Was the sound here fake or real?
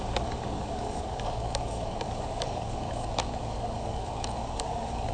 fake